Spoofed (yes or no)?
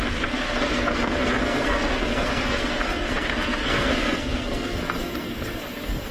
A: yes